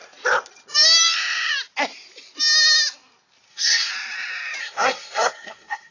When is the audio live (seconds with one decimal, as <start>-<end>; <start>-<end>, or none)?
0.0-3.5; 3.9-4.6